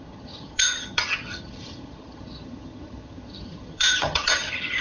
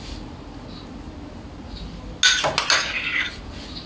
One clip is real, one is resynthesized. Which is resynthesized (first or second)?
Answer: first